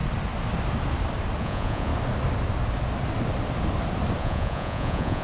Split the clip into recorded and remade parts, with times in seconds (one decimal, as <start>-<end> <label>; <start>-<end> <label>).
0.0-1.4 recorded; 1.4-1.9 remade; 1.9-4.2 recorded; 4.2-5.2 remade